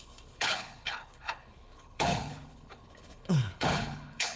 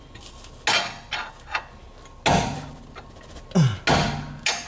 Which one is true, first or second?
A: second